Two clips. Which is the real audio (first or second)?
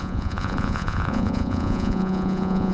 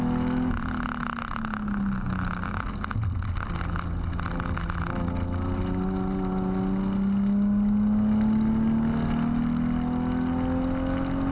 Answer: second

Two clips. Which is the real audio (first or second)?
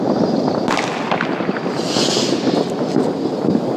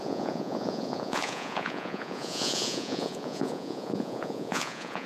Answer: first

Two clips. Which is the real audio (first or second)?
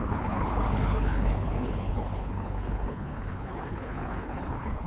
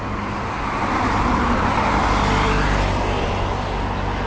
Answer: second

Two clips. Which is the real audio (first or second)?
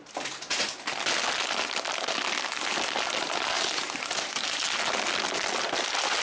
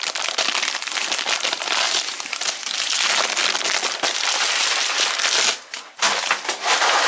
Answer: first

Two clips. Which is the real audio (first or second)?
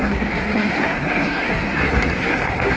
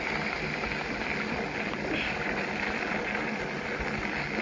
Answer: second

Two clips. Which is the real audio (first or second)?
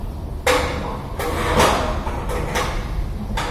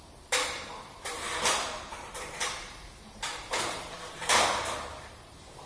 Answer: first